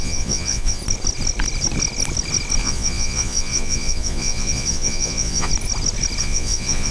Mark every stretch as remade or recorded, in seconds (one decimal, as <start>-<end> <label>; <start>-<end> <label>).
0.0-0.8 remade; 0.8-2.6 recorded; 2.6-5.5 remade; 5.5-6.2 recorded; 6.2-6.9 remade